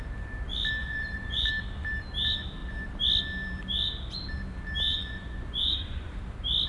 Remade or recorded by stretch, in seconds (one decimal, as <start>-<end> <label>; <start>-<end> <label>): 0.0-0.8 recorded; 0.8-1.5 remade; 1.5-4.9 recorded; 4.9-6.1 remade; 6.1-6.7 recorded